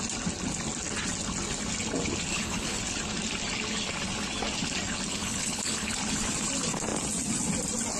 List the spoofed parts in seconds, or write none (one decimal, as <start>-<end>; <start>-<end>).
2.3-2.8; 5.1-6.0